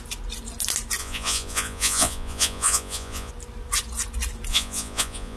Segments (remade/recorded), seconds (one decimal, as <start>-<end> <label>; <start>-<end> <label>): 0.0-1.0 recorded; 1.0-3.3 remade; 3.3-4.5 recorded; 4.5-5.4 remade